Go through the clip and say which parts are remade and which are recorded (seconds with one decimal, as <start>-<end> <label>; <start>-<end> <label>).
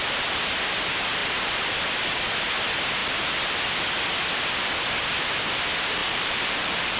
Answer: 0.0-6.0 recorded; 6.0-7.0 remade